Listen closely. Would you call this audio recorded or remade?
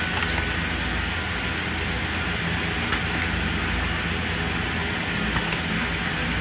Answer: recorded